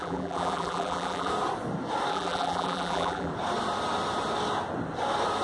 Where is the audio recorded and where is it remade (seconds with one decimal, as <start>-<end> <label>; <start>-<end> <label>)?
0.0-1.3 remade; 1.3-2.1 recorded; 2.1-3.3 remade; 3.3-5.4 recorded